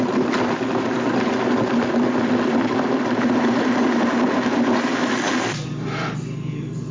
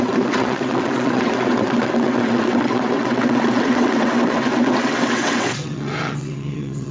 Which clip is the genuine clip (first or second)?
first